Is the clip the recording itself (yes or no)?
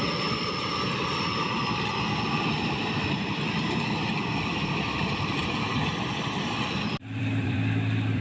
no